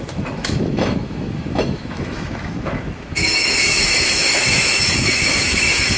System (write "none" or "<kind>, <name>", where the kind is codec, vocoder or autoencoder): autoencoder, DAC-VAE